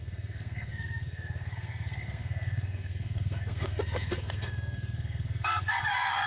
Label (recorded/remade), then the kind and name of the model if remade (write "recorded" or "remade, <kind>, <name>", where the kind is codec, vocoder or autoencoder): remade, codec, SNAC